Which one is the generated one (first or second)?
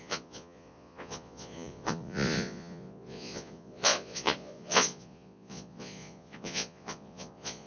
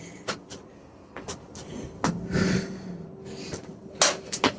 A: first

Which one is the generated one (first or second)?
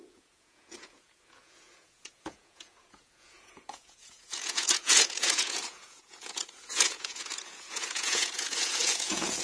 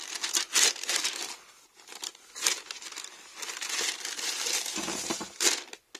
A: first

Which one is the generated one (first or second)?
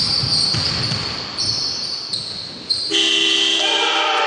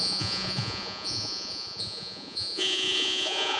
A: second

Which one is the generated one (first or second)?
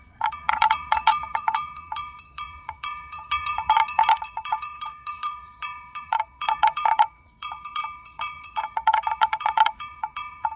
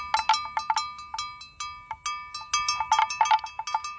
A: first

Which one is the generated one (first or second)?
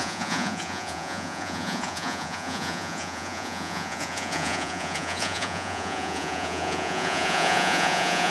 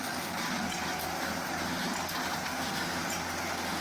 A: first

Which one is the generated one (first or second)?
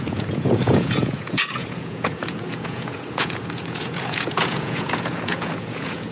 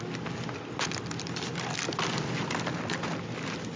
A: first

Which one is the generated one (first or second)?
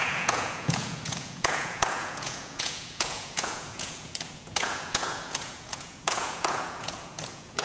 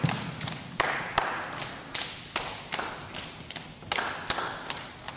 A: first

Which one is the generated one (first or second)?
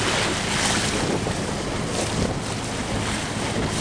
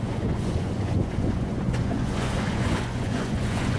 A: second